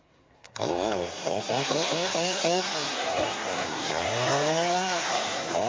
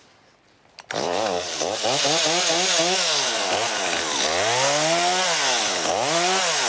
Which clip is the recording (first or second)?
second